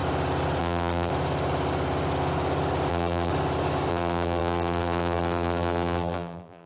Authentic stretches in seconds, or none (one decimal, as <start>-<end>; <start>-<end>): 0.0-0.6; 1.1-2.9; 3.3-3.9